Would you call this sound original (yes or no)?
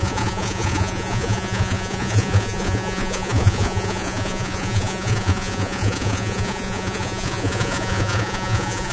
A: no